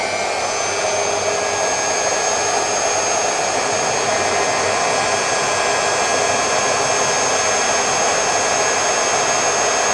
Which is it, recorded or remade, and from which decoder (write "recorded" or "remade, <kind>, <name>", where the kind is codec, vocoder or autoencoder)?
recorded